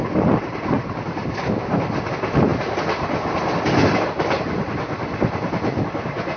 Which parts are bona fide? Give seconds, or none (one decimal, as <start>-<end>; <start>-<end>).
0.0-6.4